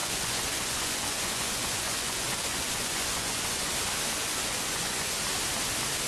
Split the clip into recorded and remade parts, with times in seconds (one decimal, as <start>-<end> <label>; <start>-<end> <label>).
0.0-3.7 remade; 3.7-4.2 recorded; 4.2-5.2 remade; 5.2-6.1 recorded